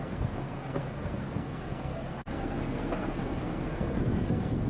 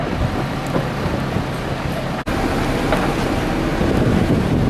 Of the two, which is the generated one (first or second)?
first